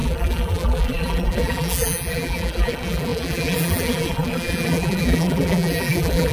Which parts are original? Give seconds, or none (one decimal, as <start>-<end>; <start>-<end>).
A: none